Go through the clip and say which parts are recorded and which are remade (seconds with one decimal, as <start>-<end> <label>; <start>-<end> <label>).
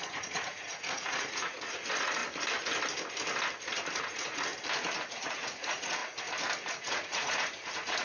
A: 0.0-2.2 remade; 2.2-4.0 recorded; 4.0-4.5 remade; 4.5-5.1 recorded; 5.1-6.0 remade; 6.0-6.7 recorded; 6.7-8.0 remade